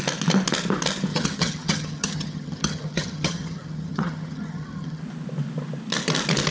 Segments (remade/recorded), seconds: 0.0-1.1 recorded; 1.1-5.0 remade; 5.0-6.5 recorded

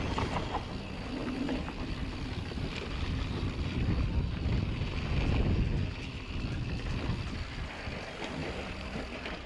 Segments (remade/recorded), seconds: 0.0-1.2 recorded; 1.2-4.3 remade; 4.3-8.4 recorded; 8.4-9.0 remade; 9.0-9.5 recorded

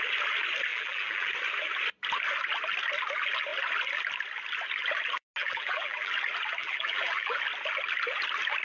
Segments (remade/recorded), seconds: 0.0-0.7 recorded; 0.7-1.3 remade; 1.3-5.4 recorded; 5.4-6.1 remade; 6.1-6.6 recorded; 6.6-7.4 remade; 7.4-8.6 recorded

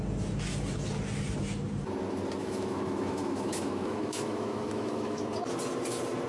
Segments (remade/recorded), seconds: 0.0-2.4 recorded; 2.4-5.2 remade; 5.2-6.3 recorded

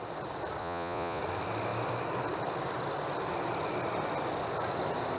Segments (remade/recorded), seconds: 0.0-0.6 recorded; 0.6-1.2 remade; 1.2-5.2 recorded

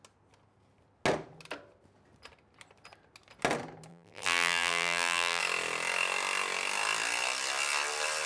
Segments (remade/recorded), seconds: 0.0-3.9 recorded; 3.9-5.4 remade; 5.4-8.3 recorded

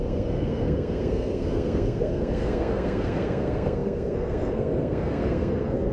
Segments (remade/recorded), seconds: 0.0-5.9 remade